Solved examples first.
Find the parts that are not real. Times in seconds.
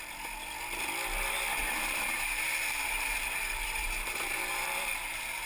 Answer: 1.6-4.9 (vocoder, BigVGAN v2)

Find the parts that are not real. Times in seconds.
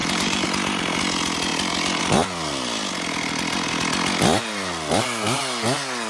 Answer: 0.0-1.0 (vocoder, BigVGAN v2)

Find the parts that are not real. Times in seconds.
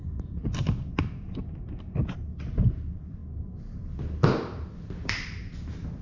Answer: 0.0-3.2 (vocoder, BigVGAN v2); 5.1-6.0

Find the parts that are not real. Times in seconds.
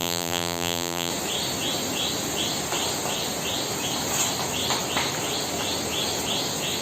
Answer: 0.0-1.1 (vocoder, BigVGAN v2)